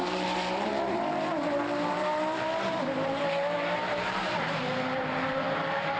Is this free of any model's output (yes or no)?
no